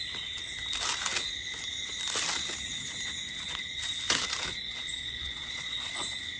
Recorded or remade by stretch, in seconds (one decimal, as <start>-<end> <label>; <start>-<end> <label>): 0.0-4.5 recorded; 4.5-5.9 remade; 5.9-6.4 recorded